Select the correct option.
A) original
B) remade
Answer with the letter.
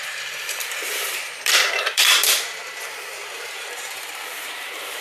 B